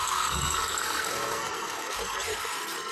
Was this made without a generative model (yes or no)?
no